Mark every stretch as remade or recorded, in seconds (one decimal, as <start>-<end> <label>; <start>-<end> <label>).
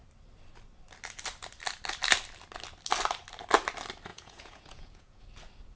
0.0-4.1 recorded; 4.1-5.2 remade; 5.2-5.8 recorded